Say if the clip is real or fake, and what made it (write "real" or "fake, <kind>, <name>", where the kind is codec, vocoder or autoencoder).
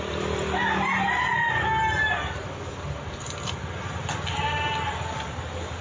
real